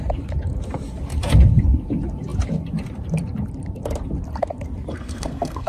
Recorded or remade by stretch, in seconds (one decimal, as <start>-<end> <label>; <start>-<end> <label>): 0.0-4.9 recorded; 4.9-5.7 remade